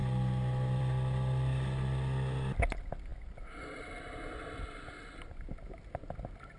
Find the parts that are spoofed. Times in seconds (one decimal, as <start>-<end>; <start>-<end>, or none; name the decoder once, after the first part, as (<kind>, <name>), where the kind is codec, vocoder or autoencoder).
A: none